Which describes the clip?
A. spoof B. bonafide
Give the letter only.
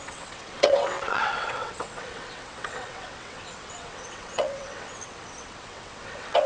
A